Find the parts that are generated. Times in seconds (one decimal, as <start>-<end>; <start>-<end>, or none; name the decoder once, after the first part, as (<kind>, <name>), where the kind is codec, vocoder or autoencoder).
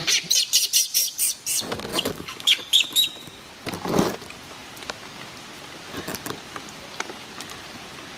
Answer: 1.9-3.5 (codec, DAC)